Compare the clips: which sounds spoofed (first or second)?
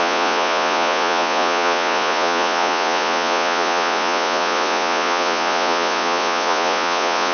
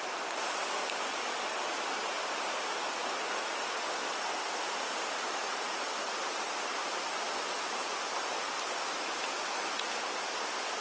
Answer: first